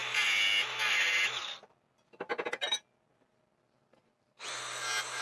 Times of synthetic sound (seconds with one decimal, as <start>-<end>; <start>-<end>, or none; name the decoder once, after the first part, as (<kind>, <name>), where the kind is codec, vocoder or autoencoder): none

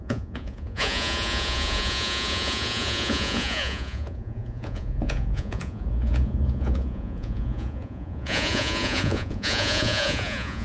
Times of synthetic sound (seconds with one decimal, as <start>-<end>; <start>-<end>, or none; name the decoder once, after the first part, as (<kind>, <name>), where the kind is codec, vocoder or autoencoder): 0.0-10.6 (vocoder, Vocos)

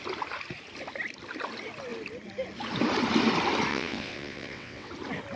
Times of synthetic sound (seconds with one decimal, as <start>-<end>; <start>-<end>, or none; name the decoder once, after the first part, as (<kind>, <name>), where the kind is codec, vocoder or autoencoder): 3.7-4.9 (vocoder, WaveNeXt)

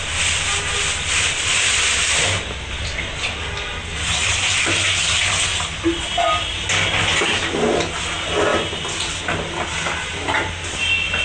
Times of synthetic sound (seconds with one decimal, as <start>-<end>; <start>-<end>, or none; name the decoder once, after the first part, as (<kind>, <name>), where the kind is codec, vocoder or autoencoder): 4.2-5.2 (vocoder, BigVGAN v2)

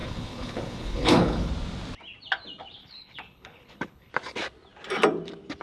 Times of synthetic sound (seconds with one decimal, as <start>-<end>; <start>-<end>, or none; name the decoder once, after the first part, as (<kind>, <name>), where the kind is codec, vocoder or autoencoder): 0.0-1.5 (codec, HILCodec); 2.8-4.1

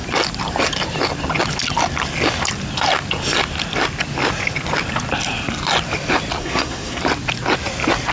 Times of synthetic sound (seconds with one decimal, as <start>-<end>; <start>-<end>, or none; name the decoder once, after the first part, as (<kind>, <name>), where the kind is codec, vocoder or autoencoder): 6.4-7.0 (codec, SNAC)

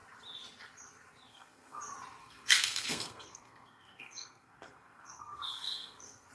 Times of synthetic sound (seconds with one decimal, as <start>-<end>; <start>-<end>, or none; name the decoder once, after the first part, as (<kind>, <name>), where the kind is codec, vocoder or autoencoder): 1.3-1.8 (codec, SNAC); 2.2-6.3